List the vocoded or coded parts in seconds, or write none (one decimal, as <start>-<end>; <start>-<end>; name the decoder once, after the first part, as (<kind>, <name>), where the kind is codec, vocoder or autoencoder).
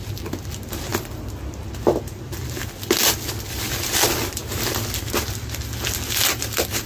none